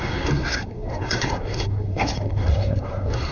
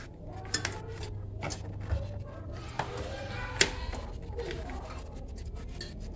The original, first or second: second